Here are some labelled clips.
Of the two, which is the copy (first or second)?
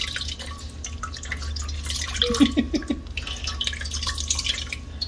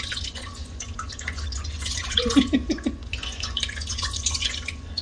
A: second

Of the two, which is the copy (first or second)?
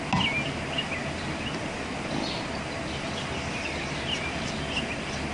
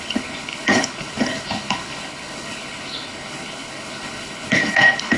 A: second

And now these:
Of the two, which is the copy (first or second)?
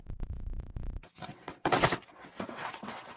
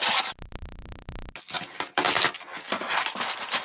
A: first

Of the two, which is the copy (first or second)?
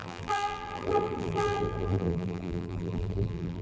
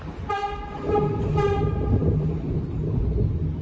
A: first